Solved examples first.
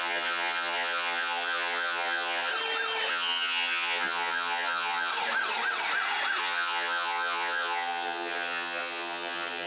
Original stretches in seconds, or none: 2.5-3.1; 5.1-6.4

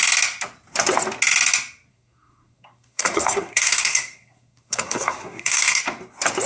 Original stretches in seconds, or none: 0.0-1.9; 5.8-6.5

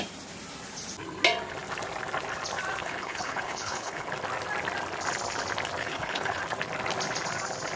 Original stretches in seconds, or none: 0.0-2.8; 4.1-5.8; 6.4-7.8

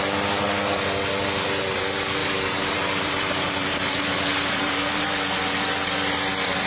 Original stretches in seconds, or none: 0.0-2.2; 4.7-6.7

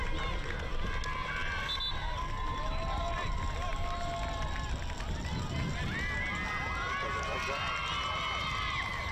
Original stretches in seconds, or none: 0.0-9.1

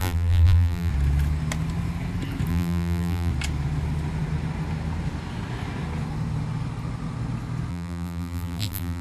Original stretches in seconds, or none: 0.9-2.5; 3.3-7.7

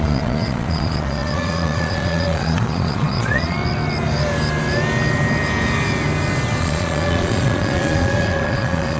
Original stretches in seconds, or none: 3.6-6.6

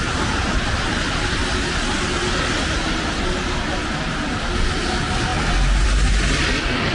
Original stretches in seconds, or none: 0.0-6.9